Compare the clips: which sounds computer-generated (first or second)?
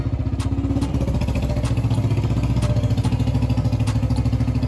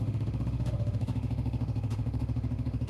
second